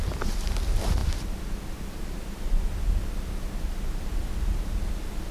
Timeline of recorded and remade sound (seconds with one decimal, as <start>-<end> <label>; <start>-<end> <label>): 0.0-5.3 recorded